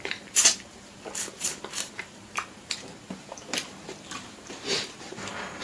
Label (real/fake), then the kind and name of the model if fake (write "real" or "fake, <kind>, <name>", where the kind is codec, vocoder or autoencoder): fake, vocoder, BigVGAN v2